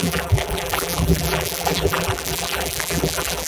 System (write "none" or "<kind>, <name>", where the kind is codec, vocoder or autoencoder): vocoder, BigVGAN v2